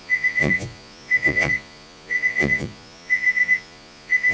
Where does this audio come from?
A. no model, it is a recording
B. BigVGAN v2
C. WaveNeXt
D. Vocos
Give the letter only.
D